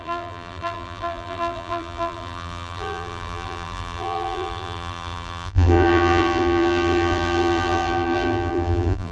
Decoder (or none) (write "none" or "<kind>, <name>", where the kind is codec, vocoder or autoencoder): vocoder, BigVGAN v2